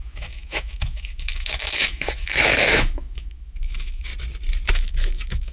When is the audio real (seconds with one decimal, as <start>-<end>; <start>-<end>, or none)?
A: 4.1-4.7